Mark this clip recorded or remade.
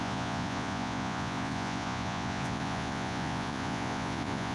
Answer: remade